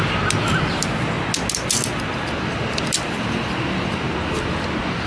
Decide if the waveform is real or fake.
real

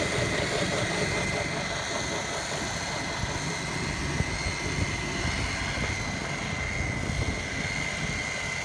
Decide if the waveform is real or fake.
real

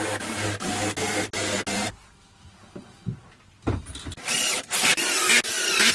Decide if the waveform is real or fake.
real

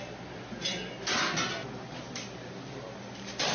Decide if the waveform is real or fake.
real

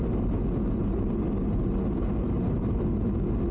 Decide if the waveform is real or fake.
real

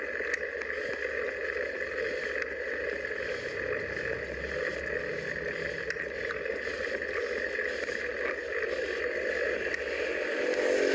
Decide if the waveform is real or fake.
real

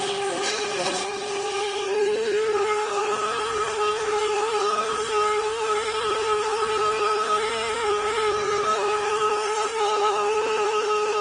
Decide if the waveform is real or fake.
fake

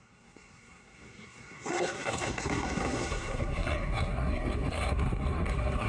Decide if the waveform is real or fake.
fake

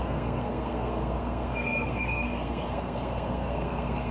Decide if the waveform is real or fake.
fake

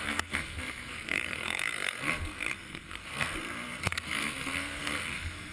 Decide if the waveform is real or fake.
fake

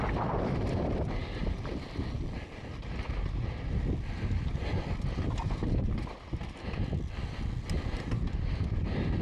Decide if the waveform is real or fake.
real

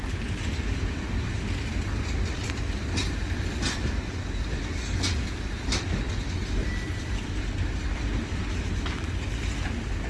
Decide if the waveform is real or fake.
real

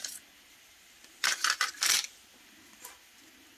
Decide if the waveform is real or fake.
real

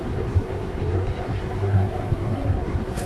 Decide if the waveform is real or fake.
fake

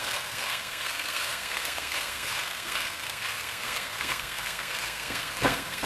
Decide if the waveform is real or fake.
fake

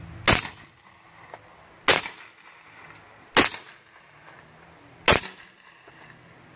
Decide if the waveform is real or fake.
real